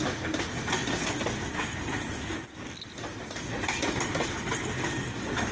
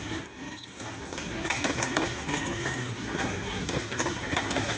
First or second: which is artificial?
second